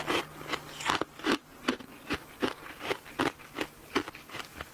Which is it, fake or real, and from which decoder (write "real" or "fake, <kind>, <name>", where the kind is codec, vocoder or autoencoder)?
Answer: real